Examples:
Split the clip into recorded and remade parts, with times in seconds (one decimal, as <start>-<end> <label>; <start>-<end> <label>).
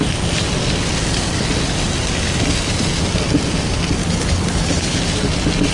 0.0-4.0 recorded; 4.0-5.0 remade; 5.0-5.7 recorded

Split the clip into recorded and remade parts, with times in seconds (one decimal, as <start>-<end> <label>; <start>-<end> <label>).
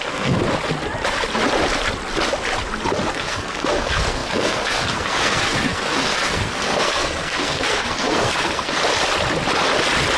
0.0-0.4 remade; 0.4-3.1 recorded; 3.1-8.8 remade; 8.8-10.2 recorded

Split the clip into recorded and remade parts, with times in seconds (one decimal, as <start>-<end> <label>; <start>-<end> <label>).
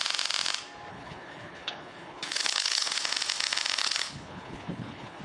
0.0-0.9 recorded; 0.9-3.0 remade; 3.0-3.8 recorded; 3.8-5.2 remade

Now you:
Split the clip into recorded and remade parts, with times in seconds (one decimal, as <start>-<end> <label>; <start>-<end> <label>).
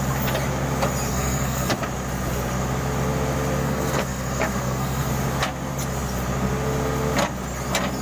0.0-1.1 recorded; 1.1-1.7 remade; 1.7-3.6 recorded; 3.6-5.1 remade; 5.1-8.0 recorded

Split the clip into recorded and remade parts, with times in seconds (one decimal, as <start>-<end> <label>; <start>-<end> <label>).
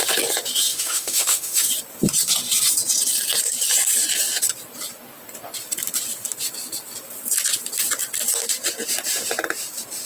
0.0-0.7 recorded; 0.7-1.7 remade; 1.7-10.1 recorded